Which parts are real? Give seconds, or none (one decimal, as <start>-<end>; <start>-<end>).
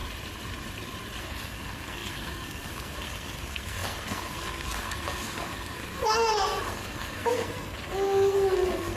0.0-1.2